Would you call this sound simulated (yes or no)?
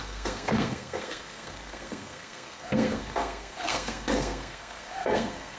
yes